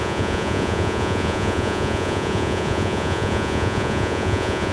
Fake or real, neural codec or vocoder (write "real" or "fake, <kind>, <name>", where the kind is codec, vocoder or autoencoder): fake, vocoder, Vocos